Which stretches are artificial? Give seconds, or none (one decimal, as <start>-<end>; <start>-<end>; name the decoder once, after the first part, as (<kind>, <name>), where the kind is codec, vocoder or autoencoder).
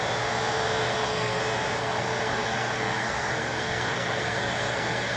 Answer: 0.9-1.4 (codec, SNAC); 1.8-5.2